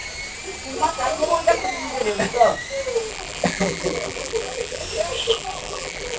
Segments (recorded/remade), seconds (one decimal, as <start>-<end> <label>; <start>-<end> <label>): 0.0-3.1 recorded; 3.1-4.8 remade; 4.8-5.3 recorded; 5.3-6.2 remade

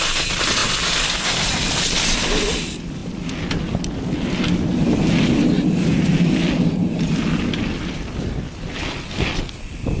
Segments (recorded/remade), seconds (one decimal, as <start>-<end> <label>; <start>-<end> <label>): 0.0-0.6 recorded; 0.6-1.4 remade; 1.4-10.0 recorded

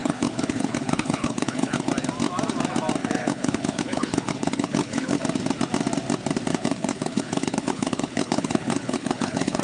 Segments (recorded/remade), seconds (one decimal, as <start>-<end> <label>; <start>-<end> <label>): 0.0-1.9 remade; 1.9-3.0 recorded; 3.0-5.2 remade; 5.2-6.5 recorded; 6.5-9.6 remade